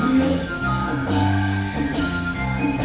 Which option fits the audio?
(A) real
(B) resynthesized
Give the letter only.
B